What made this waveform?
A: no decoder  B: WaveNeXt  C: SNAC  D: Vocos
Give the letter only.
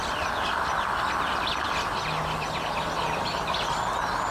A